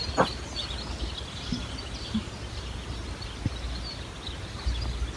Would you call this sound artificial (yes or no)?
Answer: no